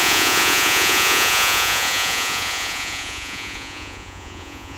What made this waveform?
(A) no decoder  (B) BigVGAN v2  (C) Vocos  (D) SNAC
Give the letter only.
C